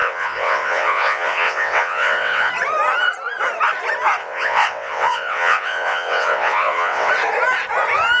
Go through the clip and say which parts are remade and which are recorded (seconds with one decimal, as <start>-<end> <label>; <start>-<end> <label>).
0.0-2.5 remade; 2.5-4.2 recorded; 4.2-7.1 remade; 7.1-8.2 recorded